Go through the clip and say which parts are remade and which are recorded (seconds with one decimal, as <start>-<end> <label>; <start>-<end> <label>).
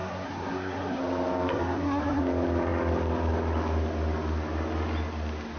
0.0-1.0 remade; 1.0-1.5 recorded; 1.5-2.2 remade; 2.2-5.6 recorded